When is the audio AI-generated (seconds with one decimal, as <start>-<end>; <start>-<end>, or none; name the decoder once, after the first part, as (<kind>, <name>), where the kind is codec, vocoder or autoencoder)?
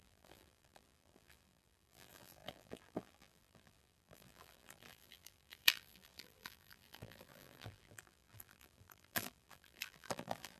0.0-10.6 (vocoder, BigVGAN v2)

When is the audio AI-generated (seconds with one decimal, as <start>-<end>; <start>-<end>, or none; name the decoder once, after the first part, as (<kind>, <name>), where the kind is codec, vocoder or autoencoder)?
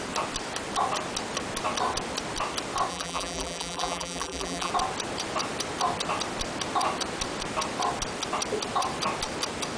2.9-4.7 (vocoder, BigVGAN v2)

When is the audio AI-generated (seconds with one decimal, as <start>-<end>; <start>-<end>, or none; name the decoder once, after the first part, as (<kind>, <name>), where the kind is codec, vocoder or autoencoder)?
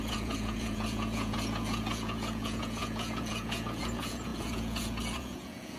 0.0-5.8 (vocoder, Vocos)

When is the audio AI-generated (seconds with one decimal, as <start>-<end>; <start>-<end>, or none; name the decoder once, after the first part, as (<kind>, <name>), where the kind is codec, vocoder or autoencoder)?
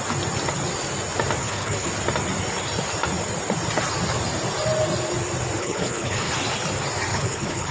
1.4-1.9 (codec, HILCodec); 5.6-6.3; 7.1-7.7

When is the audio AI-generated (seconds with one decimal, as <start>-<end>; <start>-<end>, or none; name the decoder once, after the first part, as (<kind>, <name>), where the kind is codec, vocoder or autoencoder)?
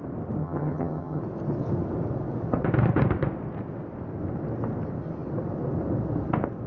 0.4-1.2 (vocoder, HiFi-GAN)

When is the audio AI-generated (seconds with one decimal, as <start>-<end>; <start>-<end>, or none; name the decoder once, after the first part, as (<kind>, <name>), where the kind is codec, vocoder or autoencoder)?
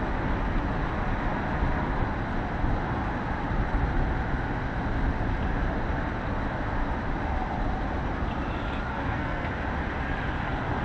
8.9-9.5 (codec, SNAC)